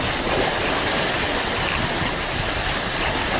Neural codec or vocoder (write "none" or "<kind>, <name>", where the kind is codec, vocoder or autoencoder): none